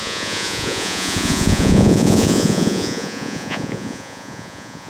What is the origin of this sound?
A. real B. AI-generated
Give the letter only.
B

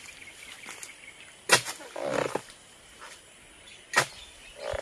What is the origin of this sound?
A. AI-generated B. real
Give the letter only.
B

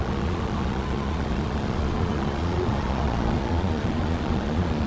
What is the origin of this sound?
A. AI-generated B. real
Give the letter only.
A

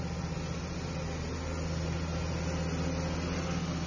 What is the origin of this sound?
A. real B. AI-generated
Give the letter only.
A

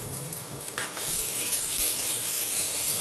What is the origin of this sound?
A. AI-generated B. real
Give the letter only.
A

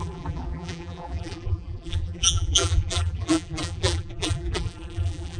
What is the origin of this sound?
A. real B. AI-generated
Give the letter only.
B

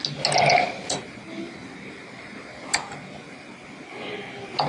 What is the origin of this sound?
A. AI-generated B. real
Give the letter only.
B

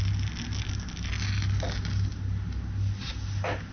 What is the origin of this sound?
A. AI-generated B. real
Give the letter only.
B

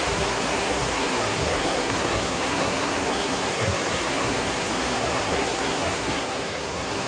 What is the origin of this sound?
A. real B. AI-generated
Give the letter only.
B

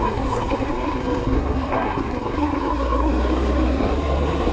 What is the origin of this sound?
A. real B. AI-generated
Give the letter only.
B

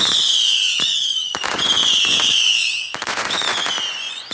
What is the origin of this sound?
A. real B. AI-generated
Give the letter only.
B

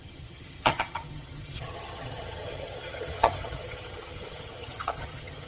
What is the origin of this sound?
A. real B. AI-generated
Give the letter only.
B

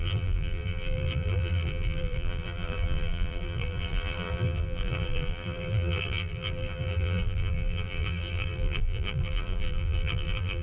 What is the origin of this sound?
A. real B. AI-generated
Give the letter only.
B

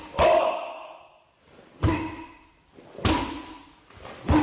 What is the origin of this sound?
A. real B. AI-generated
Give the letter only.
A